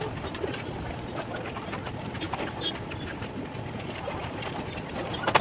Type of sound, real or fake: real